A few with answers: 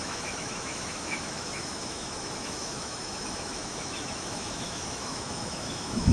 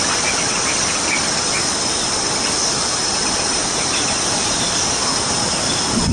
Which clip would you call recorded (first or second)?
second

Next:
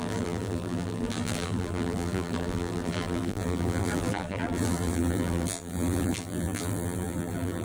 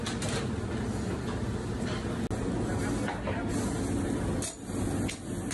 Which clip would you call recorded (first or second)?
second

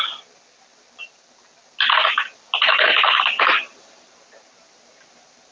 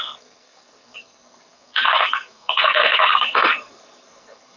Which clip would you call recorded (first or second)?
first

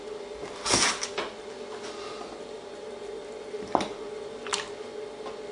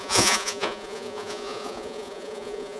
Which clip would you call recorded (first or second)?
first